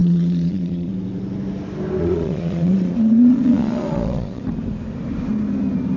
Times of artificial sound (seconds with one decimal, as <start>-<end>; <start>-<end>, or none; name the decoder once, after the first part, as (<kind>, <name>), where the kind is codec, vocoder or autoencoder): 0.0-0.9 (vocoder, Vocos); 2.0-4.4